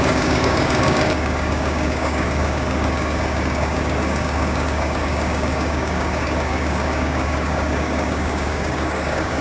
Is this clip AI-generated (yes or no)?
yes